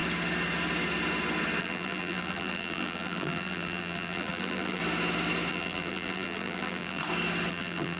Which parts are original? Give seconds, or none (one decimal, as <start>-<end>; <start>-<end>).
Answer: 0.0-1.6; 4.8-5.5; 7.0-7.5